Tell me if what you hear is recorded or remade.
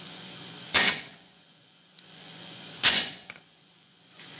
remade